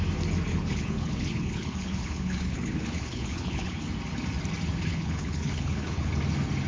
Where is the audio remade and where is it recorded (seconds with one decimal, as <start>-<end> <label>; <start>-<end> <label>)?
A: 0.0-0.5 recorded; 0.5-3.9 remade; 3.9-4.9 recorded; 4.9-6.1 remade; 6.1-6.7 recorded